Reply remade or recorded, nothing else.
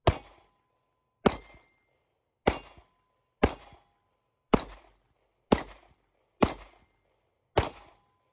recorded